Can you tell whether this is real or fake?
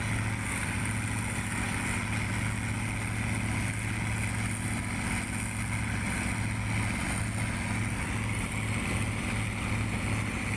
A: real